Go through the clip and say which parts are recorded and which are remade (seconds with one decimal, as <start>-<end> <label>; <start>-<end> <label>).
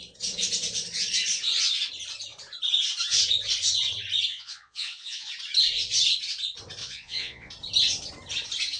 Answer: 0.0-4.3 recorded; 4.3-5.3 remade; 5.3-6.8 recorded; 6.8-7.5 remade; 7.5-8.8 recorded